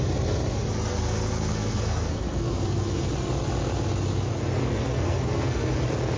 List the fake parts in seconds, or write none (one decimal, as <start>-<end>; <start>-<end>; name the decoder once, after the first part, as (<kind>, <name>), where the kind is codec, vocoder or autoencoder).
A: 0.9-3.1 (codec, SNAC); 4.6-5.7

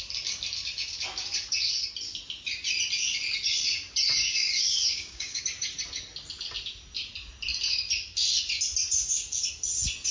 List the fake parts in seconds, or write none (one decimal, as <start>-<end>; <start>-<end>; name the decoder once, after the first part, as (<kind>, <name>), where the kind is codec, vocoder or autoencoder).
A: 4.2-5.4 (codec, DAC)

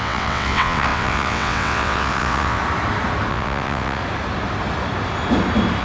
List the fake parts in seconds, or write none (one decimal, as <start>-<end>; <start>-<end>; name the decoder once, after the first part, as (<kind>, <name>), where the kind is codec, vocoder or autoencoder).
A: 0.0-2.6 (vocoder, WaveNeXt); 3.3-4.0

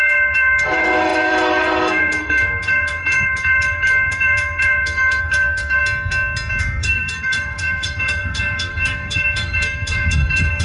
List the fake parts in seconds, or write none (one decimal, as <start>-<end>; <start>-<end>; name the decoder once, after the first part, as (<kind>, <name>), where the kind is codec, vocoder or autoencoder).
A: 0.0-5.8 (codec, SNAC); 6.6-10.6

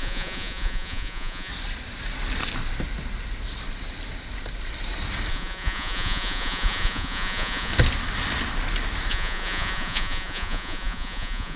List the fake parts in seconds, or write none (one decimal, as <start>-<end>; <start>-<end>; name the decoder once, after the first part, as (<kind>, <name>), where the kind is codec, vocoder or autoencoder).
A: 0.0-1.5 (vocoder, Vocos); 5.3-7.7; 9.1-11.6

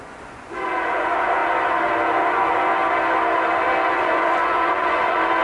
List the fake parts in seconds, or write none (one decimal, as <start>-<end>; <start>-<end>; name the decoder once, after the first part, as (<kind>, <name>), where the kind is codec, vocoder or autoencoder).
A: 0.0-1.4 (vocoder, Vocos); 2.3-2.7; 3.9-5.4